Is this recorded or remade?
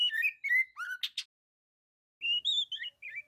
recorded